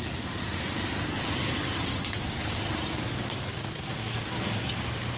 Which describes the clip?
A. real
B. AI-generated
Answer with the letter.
A